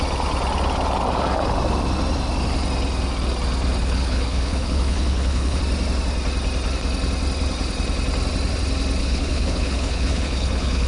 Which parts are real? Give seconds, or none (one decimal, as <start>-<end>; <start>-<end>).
0.0-3.8; 5.6-9.0